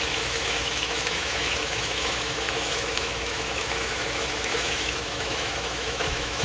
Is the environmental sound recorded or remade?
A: remade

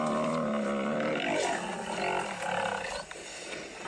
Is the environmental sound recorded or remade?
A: recorded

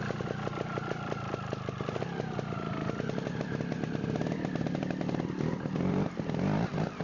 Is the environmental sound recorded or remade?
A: remade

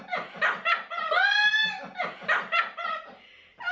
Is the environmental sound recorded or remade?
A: recorded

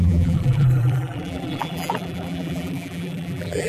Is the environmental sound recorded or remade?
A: remade